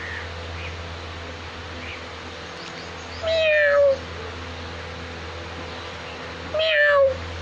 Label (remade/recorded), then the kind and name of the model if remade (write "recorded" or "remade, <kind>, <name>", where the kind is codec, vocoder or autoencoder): recorded